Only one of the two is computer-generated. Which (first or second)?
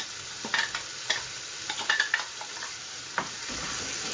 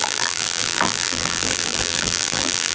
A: second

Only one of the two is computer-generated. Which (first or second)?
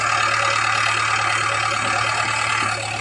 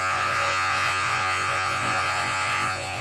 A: second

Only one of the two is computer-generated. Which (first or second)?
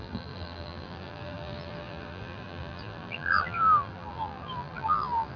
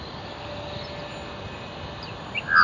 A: first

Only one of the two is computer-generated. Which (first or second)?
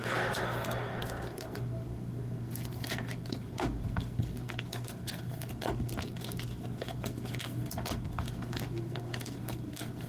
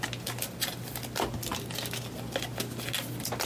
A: first